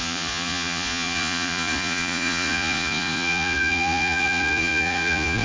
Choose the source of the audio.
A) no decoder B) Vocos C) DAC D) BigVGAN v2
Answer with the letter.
B